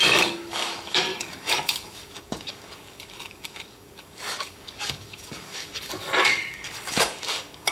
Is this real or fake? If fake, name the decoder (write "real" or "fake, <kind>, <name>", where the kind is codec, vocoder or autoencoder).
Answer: fake, codec, DAC